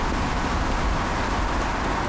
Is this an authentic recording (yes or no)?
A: yes